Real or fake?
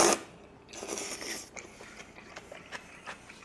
real